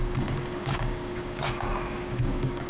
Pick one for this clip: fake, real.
fake